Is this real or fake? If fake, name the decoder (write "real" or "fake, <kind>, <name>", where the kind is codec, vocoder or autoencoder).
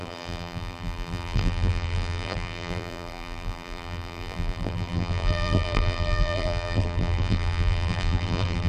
fake, vocoder, BigVGAN v2